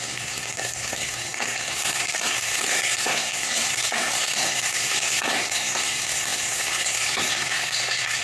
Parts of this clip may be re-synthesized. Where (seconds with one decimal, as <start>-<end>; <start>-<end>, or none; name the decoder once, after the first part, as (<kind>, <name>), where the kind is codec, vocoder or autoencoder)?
0.0-8.2 (codec, SNAC)